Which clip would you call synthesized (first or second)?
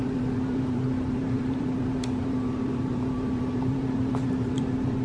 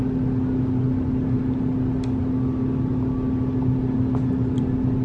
first